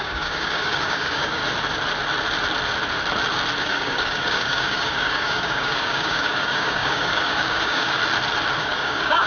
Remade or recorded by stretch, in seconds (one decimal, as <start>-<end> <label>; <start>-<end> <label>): 0.0-1.4 remade; 1.4-3.6 recorded; 3.6-8.0 remade; 8.0-8.6 recorded; 8.6-9.3 remade